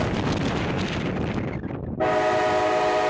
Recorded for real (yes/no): yes